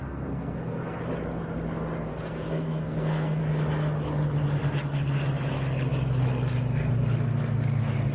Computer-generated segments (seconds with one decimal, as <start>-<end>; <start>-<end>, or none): 0.0-1.0; 2.1-3.4